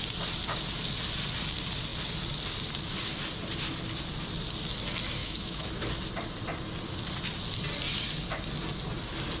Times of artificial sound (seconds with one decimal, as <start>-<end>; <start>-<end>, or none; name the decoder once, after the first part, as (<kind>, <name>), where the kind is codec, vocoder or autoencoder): 5.2-5.7 (autoencoder, DAC-VAE)